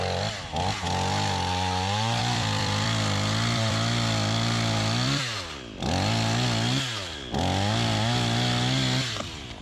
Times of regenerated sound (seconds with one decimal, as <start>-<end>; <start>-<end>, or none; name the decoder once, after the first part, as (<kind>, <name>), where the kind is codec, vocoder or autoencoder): 2.2-5.2 (vocoder, BigVGAN v2)